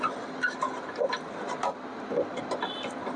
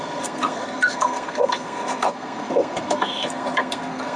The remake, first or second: second